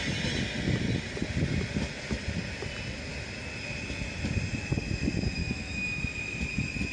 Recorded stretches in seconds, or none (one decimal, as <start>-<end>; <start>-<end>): 0.0-5.4; 6.0-6.9

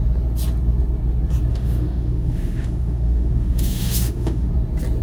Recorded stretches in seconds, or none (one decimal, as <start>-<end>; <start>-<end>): 0.0-1.5; 4.5-5.0

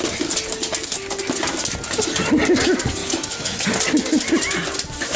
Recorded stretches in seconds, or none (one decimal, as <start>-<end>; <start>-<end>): 0.0-3.0; 3.7-5.2

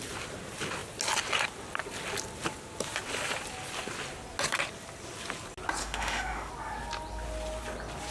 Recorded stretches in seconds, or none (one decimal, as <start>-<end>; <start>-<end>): 0.0-5.8; 6.5-8.1

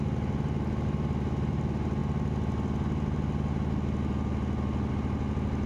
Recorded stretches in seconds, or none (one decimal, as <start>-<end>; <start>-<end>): 0.0-5.7

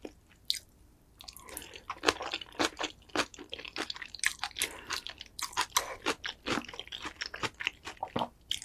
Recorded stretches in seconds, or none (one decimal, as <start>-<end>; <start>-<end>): 0.0-8.6